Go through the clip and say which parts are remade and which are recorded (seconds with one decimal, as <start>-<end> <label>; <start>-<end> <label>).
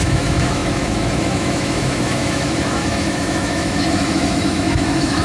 0.0-5.2 remade